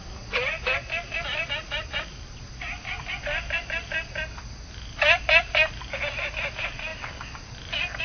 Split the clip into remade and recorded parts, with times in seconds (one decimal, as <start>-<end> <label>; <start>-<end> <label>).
0.0-8.0 recorded